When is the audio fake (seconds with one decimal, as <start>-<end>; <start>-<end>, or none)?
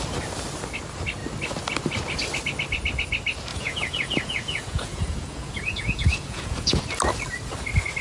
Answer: 3.5-6.8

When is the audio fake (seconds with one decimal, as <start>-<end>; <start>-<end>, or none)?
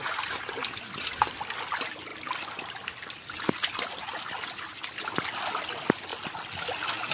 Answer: none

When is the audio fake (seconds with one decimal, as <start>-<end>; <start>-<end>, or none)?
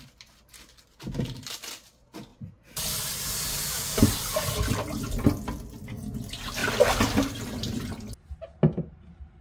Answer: 3.5-4.0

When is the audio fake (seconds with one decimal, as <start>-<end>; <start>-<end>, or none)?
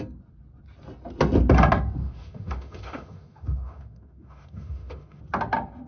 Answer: 2.0-5.2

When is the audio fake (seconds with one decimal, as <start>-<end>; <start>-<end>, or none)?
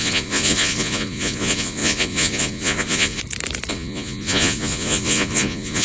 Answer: 0.0-3.2; 3.7-5.8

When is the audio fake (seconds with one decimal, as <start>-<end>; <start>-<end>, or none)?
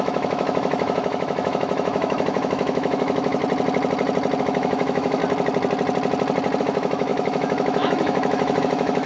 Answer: 0.0-3.4; 4.4-5.2; 6.6-9.1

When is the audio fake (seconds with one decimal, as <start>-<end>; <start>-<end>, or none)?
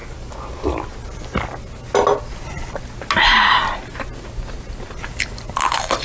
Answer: none